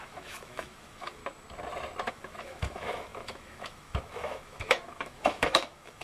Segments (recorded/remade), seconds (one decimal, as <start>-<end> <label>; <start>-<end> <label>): 0.0-1.2 remade; 1.2-2.1 recorded; 2.1-6.0 remade